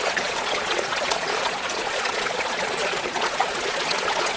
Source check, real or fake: fake